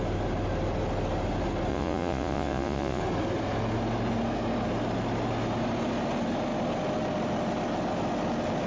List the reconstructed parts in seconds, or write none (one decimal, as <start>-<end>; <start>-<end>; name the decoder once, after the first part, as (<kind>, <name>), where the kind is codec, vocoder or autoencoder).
1.7-3.0 (vocoder, Vocos)